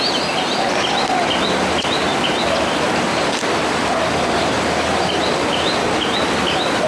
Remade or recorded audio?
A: recorded